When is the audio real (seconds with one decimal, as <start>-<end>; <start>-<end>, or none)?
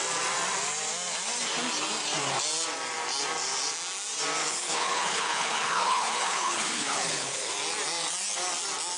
0.0-4.4; 7.5-9.0